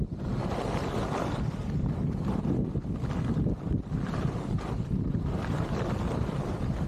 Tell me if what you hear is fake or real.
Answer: real